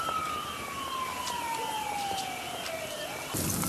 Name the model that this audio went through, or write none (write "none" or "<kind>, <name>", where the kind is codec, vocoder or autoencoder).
none